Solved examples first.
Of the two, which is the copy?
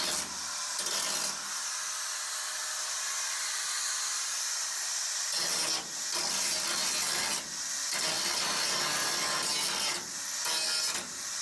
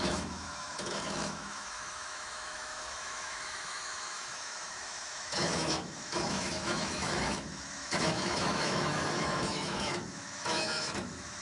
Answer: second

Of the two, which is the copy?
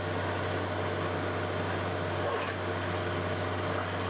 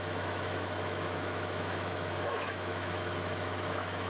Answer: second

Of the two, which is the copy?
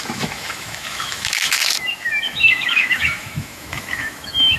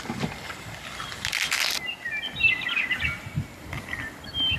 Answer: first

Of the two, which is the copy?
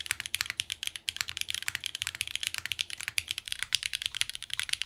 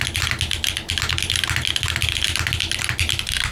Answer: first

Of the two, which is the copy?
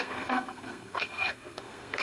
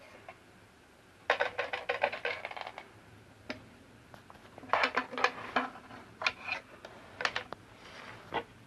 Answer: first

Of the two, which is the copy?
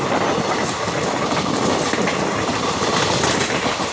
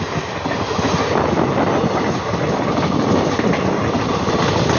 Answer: first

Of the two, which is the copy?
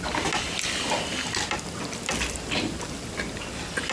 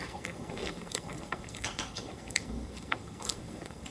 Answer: second